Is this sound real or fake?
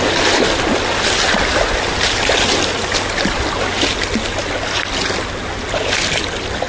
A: real